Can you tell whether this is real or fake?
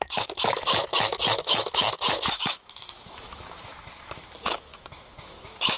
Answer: fake